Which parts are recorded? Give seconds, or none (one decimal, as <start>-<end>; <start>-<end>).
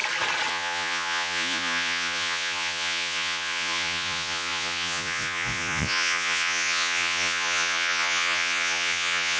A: 0.0-0.5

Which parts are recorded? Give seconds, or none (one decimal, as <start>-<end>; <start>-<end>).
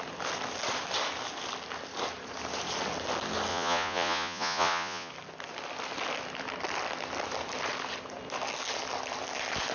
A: 0.0-3.5; 5.1-9.7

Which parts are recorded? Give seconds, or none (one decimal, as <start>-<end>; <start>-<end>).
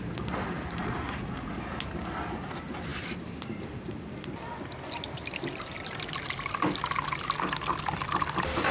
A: 0.0-0.8; 1.5-8.7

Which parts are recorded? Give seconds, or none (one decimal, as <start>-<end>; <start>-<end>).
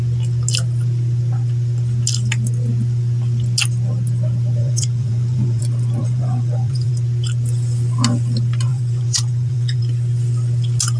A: 0.0-4.6; 5.6-6.0; 6.9-8.7; 9.8-11.0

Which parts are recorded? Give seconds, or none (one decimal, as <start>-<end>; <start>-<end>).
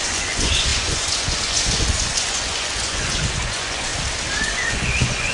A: 3.9-4.4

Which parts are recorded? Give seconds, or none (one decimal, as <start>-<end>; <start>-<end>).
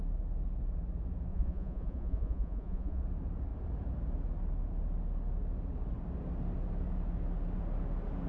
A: 0.0-1.3; 3.0-8.3